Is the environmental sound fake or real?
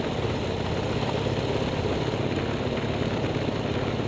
real